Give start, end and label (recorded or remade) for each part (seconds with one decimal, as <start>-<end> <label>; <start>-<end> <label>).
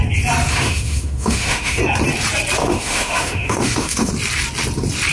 0.0-0.5 recorded; 0.5-1.8 remade; 1.8-2.6 recorded; 2.6-4.1 remade; 4.1-5.1 recorded